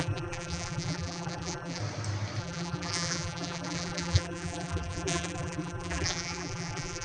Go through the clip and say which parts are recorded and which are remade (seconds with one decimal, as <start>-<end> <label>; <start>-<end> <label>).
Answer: 0.0-1.8 remade; 1.8-2.4 recorded; 2.4-7.0 remade